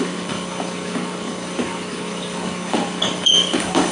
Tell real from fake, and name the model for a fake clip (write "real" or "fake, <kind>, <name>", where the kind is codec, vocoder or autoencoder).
fake, codec, DAC